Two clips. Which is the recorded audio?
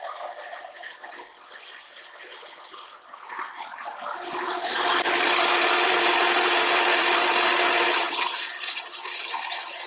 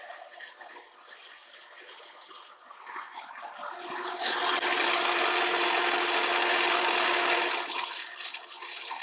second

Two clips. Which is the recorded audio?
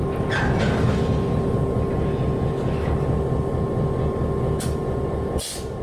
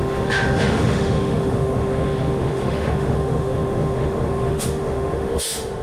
first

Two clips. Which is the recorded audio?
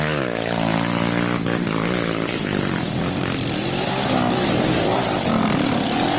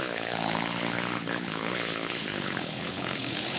first